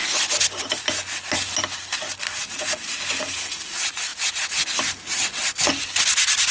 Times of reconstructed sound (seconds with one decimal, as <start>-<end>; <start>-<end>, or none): none